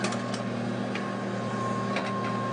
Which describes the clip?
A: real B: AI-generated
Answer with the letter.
A